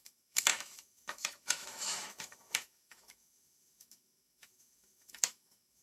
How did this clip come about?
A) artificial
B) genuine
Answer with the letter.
A